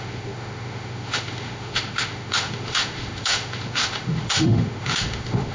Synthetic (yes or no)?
yes